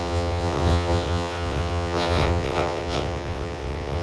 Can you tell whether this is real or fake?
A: fake